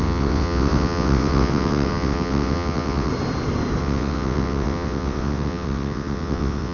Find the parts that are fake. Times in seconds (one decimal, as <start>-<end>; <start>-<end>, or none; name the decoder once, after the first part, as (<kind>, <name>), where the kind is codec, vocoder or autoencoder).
0.0-3.1 (vocoder, WaveNeXt); 3.8-6.7